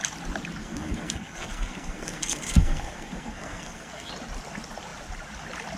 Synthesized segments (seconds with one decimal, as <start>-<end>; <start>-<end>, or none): 0.6-4.1